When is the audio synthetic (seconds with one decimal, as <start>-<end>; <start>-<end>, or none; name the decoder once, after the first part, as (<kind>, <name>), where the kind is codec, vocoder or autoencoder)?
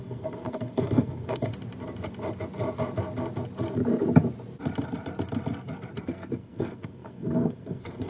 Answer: 0.0-1.5 (codec, SNAC); 6.0-8.1